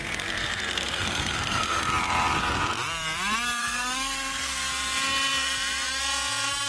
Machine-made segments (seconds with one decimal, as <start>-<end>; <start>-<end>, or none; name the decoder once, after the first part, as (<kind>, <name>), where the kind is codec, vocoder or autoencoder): 0.0-1.8 (codec, SNAC); 3.6-4.7